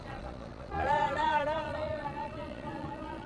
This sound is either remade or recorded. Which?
remade